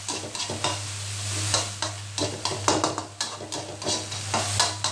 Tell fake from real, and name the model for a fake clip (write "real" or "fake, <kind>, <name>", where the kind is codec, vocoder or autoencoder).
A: real